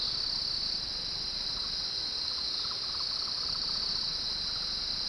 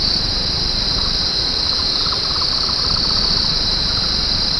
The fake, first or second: second